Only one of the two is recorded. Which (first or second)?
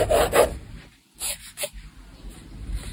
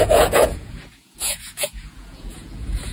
first